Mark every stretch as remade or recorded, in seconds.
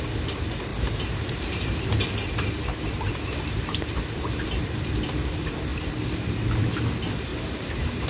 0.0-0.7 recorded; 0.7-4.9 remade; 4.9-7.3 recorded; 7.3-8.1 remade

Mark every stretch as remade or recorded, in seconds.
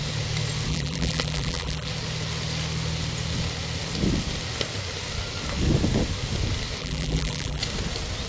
0.0-0.7 recorded; 0.7-1.9 remade; 1.9-6.8 recorded; 6.8-7.6 remade; 7.6-8.3 recorded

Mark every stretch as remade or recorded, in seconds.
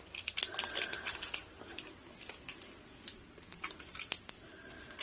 0.0-3.1 recorded; 3.1-3.7 remade; 3.7-5.0 recorded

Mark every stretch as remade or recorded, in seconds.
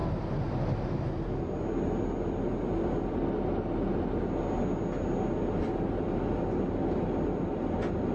0.0-8.1 recorded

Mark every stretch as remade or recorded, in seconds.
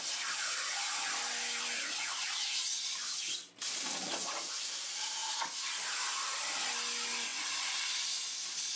0.0-8.8 recorded